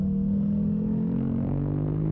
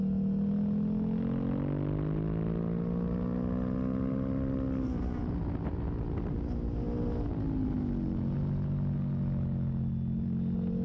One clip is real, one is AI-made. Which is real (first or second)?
second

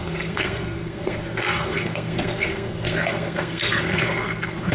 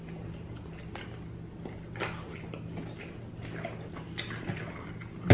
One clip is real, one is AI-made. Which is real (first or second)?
second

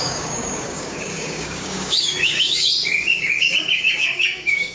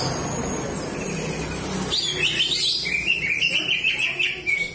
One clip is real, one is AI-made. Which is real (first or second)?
second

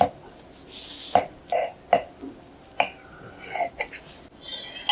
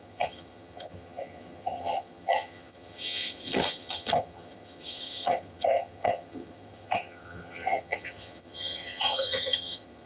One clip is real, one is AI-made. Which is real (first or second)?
first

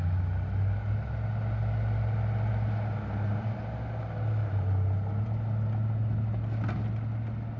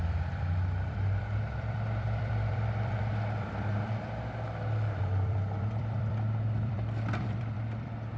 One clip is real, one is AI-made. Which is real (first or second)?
first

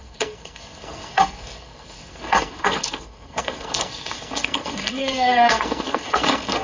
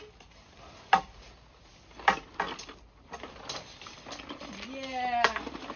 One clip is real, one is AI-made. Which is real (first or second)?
second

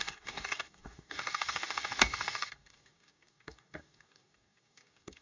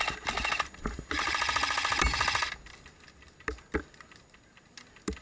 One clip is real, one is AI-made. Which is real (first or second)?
second